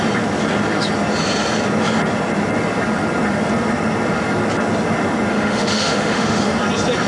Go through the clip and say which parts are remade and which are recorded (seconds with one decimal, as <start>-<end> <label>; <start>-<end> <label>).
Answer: 0.0-5.3 recorded; 5.3-6.4 remade; 6.4-7.1 recorded

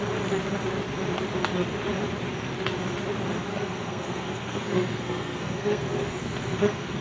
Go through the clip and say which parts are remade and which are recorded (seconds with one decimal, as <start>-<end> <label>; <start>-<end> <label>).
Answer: 0.0-3.5 recorded; 3.5-7.0 remade

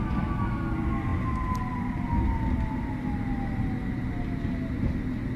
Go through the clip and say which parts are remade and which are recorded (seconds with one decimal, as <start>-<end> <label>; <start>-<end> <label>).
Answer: 0.0-5.4 recorded

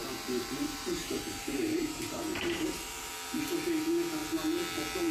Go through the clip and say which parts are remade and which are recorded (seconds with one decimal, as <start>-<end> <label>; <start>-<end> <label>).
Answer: 0.0-3.1 remade; 3.1-5.1 recorded